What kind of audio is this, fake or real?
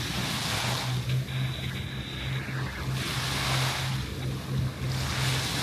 real